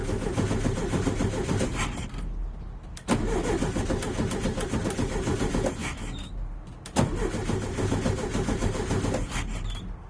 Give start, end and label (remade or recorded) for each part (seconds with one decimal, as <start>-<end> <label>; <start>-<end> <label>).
0.0-5.8 recorded; 5.8-6.3 remade; 6.3-10.1 recorded